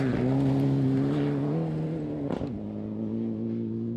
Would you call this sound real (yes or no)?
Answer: yes